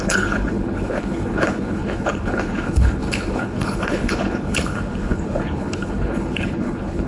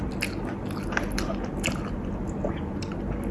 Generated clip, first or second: first